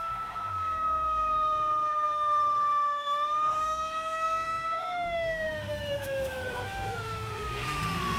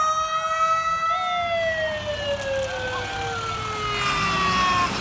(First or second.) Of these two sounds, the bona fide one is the second